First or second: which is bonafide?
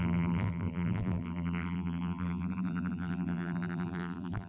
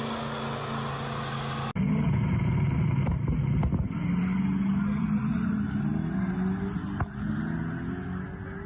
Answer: second